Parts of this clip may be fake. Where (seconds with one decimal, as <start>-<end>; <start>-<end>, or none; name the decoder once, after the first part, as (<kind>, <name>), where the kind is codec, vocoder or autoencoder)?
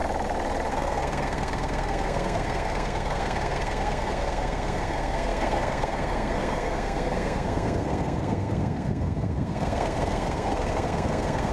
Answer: 0.7-11.5 (codec, SNAC)